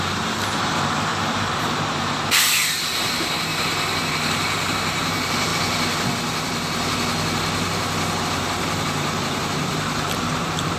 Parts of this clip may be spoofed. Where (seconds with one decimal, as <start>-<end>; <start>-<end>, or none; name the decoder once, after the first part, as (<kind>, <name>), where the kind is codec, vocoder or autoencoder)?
0.0-3.5 (vocoder, BigVGAN v2); 4.1-5.5; 8.2-10.8

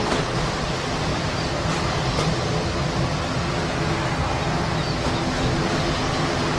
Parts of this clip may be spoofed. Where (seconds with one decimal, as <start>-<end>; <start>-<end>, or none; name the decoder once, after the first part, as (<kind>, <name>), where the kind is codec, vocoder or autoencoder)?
1.1-2.0 (vocoder, BigVGAN v2)

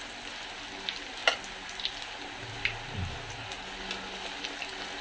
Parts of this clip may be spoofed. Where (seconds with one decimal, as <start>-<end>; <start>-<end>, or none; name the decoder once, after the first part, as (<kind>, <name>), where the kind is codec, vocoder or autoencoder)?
none

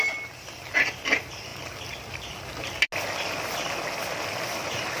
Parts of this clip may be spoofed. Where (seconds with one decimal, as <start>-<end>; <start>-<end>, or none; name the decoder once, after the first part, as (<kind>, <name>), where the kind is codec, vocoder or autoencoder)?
none

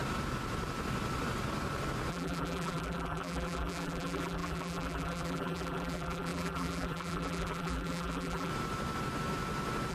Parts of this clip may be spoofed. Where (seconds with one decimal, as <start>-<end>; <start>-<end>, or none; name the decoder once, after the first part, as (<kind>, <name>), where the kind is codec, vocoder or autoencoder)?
2.1-8.5 (vocoder, BigVGAN v2)

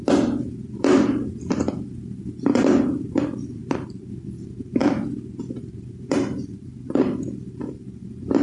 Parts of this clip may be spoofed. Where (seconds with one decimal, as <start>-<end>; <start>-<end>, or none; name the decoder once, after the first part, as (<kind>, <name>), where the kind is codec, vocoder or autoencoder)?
0.0-4.8 (vocoder, BigVGAN v2); 5.5-8.4

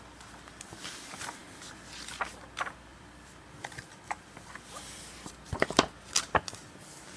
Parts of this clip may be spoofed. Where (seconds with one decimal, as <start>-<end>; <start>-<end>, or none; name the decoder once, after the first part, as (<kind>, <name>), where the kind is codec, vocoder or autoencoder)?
2.9-5.9 (vocoder, BigVGAN v2)

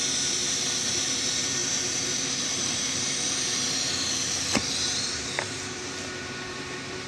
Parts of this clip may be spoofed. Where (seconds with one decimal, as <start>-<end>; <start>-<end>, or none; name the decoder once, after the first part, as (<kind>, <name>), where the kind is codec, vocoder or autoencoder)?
0.0-0.4 (vocoder, BigVGAN v2); 1.1-7.1